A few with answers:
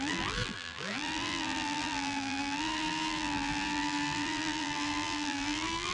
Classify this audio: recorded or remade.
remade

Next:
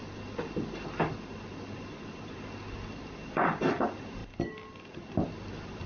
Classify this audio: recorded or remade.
remade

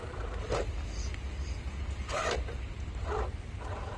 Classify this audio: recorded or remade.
recorded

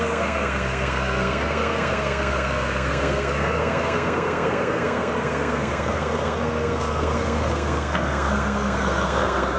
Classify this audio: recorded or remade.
remade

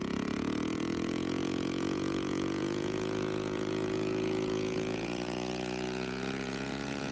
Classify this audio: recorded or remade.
remade